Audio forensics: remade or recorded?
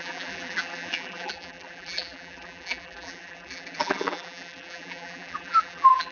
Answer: remade